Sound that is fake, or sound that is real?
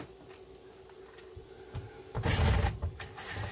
real